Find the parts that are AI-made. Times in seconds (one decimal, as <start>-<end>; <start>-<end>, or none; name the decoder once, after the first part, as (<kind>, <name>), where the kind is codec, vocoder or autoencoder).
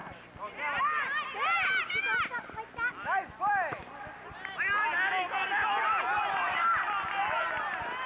none